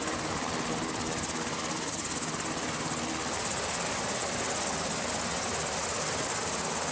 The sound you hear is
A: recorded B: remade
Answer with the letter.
A